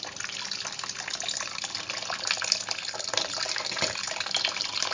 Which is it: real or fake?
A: real